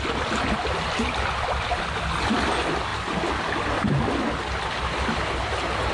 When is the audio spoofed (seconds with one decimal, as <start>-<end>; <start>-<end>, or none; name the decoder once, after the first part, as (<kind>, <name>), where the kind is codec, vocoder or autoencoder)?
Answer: none